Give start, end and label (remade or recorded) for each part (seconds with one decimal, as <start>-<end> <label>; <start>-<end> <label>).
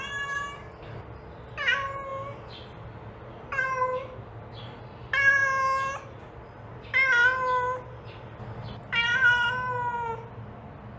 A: 0.0-11.0 recorded